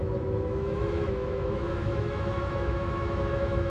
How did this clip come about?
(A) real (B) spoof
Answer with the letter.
B